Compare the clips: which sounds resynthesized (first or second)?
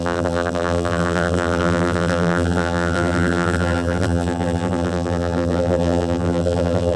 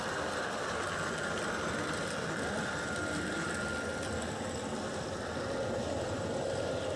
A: first